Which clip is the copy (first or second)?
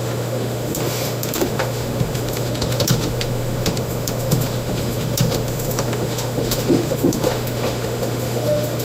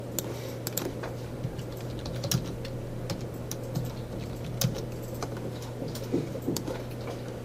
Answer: first